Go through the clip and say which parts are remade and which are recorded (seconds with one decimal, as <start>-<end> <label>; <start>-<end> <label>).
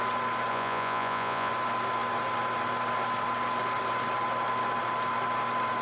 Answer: 0.0-0.5 recorded; 0.5-1.5 remade; 1.5-5.8 recorded